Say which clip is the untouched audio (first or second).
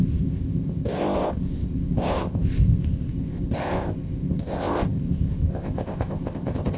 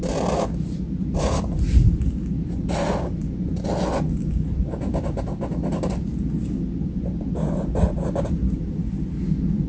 second